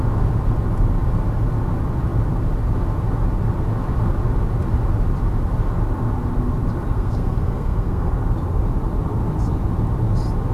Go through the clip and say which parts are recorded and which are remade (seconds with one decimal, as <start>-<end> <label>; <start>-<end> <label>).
0.0-6.9 recorded; 6.9-8.1 remade; 8.1-10.5 recorded